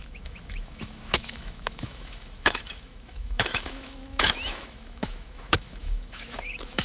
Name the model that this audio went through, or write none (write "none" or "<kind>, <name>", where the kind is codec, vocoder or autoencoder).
autoencoder, DAC-VAE